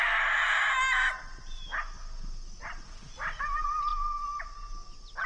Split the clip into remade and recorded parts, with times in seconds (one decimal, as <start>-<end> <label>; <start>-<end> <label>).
0.0-5.3 recorded